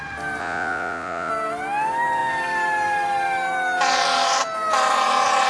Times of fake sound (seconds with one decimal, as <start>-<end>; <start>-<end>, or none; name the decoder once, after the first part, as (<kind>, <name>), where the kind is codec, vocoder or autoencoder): 0.4-1.3 (vocoder, Vocos)